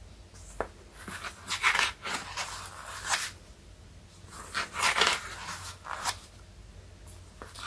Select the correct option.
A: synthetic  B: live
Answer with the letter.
B